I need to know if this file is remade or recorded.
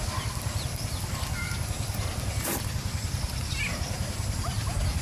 recorded